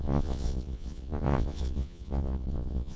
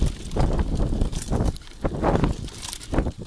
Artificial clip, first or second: first